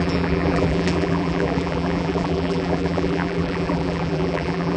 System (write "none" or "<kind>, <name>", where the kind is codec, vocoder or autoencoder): vocoder, BigVGAN v2